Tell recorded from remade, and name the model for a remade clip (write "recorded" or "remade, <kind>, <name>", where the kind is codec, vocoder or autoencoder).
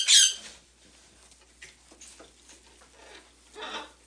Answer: recorded